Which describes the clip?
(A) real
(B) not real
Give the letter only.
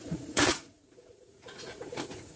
B